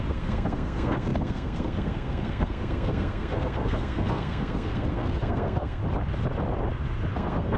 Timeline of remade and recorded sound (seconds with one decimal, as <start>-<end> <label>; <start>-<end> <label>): 0.0-5.8 remade; 5.8-7.1 recorded; 7.1-7.6 remade